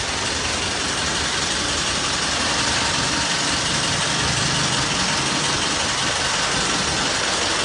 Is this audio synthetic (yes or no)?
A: no